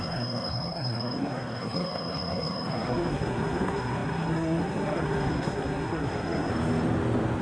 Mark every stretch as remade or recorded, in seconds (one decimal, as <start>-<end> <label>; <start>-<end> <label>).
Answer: 0.0-6.5 remade; 6.5-7.4 recorded